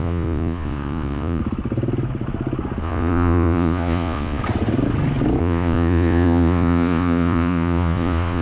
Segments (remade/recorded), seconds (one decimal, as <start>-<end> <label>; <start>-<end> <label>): 0.0-1.4 remade; 1.4-2.8 recorded; 2.8-4.4 remade; 4.4-5.4 recorded; 5.4-8.4 remade

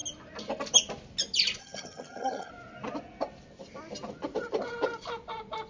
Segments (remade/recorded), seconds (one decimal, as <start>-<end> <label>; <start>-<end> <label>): 0.0-1.6 recorded; 1.6-2.5 remade; 2.5-5.7 recorded